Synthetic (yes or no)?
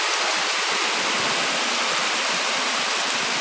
no